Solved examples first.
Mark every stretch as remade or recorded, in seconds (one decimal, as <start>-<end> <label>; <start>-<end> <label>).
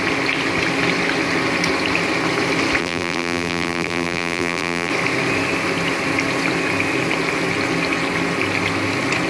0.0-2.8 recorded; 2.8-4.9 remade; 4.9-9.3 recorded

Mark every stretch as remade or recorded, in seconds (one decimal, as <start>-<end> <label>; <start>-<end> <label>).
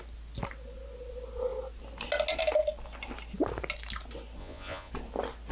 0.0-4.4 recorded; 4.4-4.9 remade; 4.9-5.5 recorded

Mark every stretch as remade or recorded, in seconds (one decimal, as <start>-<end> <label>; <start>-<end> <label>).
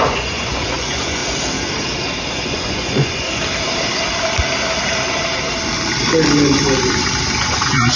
0.0-1.2 remade; 1.2-2.3 recorded; 2.3-3.4 remade; 3.4-7.4 recorded; 7.4-8.0 remade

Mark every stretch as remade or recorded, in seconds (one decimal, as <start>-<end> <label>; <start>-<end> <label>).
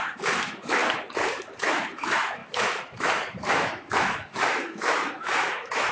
0.0-0.8 remade; 0.8-1.6 recorded; 1.6-5.9 remade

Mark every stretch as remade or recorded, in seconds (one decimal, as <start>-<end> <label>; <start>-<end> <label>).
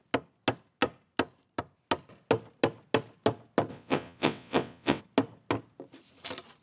0.0-3.7 recorded; 3.7-5.0 remade; 5.0-6.6 recorded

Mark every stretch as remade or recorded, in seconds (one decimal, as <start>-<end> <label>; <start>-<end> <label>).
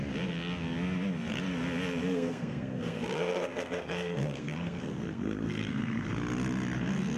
0.0-2.1 recorded; 2.1-6.1 remade; 6.1-7.2 recorded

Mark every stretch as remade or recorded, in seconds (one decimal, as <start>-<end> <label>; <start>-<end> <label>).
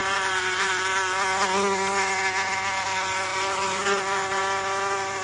0.0-0.7 remade; 0.7-3.3 recorded; 3.3-4.4 remade; 4.4-5.2 recorded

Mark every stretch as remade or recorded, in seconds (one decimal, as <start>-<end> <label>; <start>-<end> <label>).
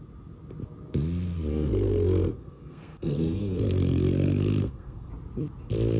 0.0-1.5 recorded; 1.5-5.1 remade; 5.1-6.0 recorded